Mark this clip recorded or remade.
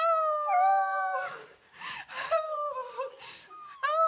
remade